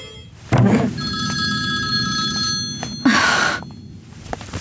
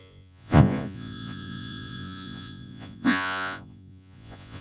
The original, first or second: first